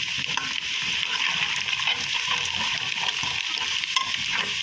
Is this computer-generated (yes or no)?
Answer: no